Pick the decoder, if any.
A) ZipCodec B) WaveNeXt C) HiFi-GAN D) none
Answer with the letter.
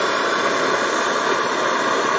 D